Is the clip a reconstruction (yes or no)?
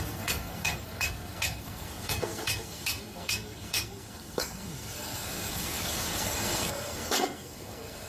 yes